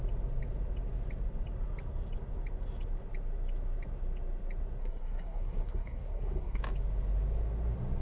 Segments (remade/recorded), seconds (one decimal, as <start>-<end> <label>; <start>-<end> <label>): 0.0-4.8 recorded; 4.8-6.6 remade; 6.6-8.0 recorded